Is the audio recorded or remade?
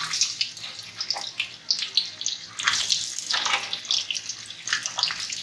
recorded